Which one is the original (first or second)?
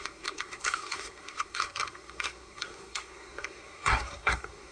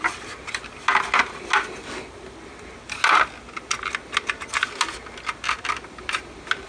second